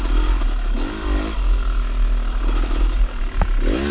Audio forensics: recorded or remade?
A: recorded